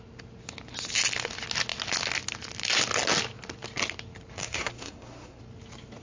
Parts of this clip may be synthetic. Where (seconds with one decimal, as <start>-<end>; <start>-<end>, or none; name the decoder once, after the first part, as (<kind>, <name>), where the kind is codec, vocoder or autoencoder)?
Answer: 4.4-5.4 (codec, SNAC)